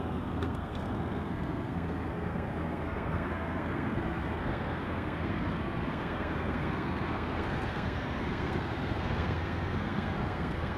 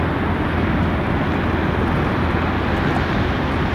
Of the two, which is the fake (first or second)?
first